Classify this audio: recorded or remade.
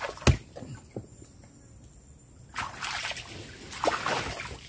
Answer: recorded